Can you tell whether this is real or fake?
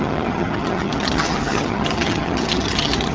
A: fake